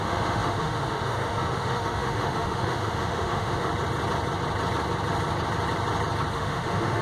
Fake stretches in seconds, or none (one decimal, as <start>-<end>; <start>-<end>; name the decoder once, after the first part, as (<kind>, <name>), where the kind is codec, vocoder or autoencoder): 0.0-3.7 (autoencoder, DAC-VAE); 6.3-7.0